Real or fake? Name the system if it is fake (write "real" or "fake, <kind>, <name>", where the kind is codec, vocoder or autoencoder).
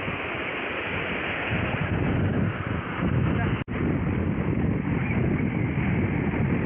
real